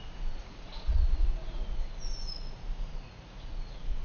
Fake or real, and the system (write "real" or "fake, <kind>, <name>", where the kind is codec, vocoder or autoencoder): fake, vocoder, Vocos